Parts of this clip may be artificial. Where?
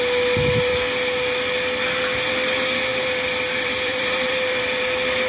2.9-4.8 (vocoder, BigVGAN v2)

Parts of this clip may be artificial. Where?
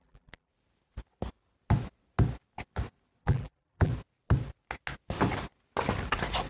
0.0-0.5 (vocoder, BigVGAN v2); 3.2-3.9